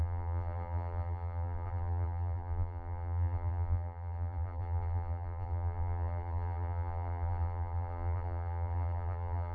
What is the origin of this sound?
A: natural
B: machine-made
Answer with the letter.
B